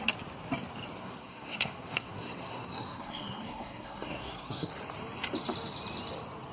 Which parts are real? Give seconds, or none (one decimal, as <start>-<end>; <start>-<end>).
0.0-1.0; 4.7-6.5